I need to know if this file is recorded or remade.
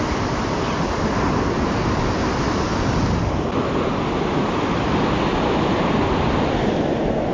recorded